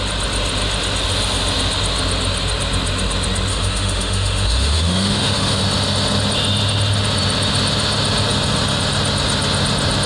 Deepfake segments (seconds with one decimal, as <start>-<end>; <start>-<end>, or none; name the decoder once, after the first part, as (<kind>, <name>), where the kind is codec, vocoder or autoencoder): 3.5-5.6 (autoencoder, DAC-VAE)